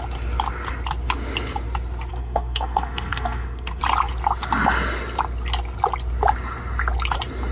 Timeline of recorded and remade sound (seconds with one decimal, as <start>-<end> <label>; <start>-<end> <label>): 0.0-2.1 recorded; 2.1-3.8 remade; 3.8-7.5 recorded